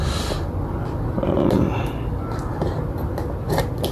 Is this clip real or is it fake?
real